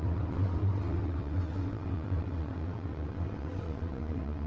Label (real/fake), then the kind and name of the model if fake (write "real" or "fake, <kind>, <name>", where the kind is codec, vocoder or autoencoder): fake, vocoder, WaveNeXt